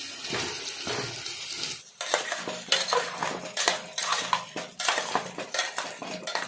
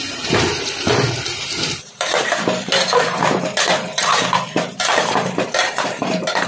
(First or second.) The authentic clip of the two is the first